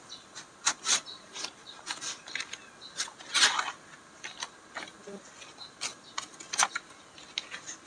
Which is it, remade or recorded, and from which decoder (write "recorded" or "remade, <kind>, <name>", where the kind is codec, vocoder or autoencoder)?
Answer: recorded